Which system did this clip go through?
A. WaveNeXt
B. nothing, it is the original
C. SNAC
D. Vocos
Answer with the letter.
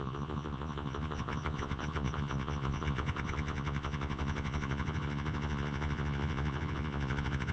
D